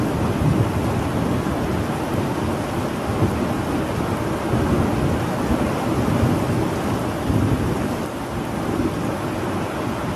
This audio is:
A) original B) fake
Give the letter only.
A